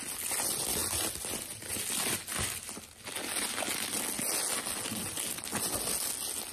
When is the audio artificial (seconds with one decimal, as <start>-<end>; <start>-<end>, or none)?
4.9-5.4